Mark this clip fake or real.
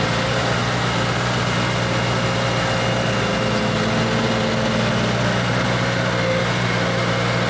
real